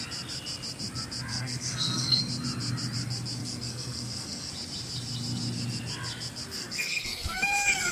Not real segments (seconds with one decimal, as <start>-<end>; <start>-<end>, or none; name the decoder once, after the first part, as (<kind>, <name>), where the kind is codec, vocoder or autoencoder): 1.3-2.2 (codec, SNAC); 3.4-4.5; 6.6-7.9